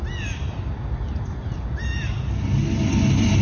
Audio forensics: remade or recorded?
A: recorded